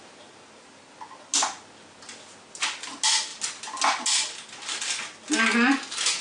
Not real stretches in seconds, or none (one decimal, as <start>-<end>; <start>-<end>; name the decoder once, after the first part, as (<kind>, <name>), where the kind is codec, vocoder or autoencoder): none